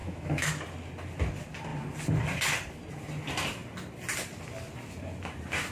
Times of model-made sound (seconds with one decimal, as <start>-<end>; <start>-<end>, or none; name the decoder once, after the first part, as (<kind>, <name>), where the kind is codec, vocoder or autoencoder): 0.0-0.5 (autoencoder, DAC-VAE)